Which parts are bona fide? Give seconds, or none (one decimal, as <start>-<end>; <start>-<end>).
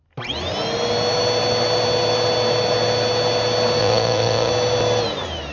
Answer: 0.0-3.8; 4.5-5.5